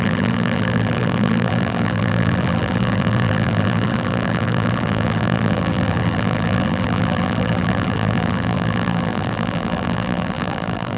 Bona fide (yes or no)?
no